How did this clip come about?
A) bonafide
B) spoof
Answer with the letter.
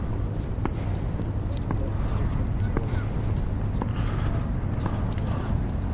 A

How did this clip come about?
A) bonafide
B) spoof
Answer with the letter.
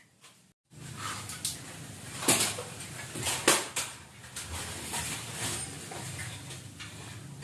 A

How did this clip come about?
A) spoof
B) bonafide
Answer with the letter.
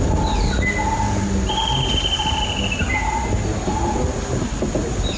B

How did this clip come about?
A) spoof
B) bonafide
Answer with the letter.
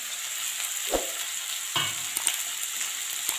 B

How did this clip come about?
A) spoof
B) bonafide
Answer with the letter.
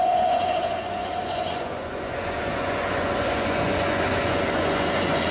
A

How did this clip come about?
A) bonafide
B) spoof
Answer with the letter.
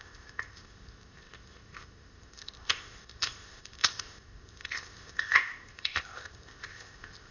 B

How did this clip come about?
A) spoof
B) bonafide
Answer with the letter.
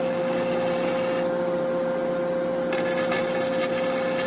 B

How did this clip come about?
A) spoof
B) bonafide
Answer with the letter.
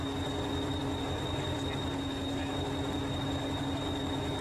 B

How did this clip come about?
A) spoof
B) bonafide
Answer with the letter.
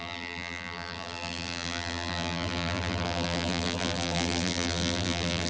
A